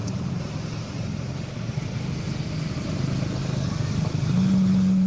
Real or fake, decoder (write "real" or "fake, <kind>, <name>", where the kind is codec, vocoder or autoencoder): real